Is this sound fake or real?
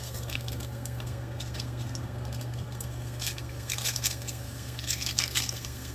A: fake